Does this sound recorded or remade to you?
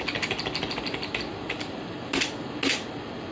recorded